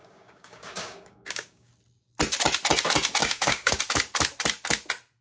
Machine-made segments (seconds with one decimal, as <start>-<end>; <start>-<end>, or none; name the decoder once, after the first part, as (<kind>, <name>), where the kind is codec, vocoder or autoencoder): 0.0-1.7 (codec, DAC); 3.2-3.8